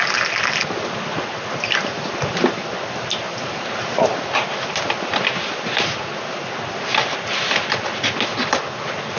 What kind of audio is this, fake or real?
real